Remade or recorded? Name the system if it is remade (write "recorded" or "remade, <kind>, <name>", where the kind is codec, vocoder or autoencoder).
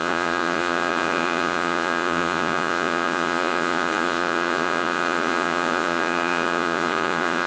remade, vocoder, Vocos